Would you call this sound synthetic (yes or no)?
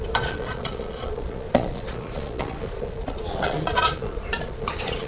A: yes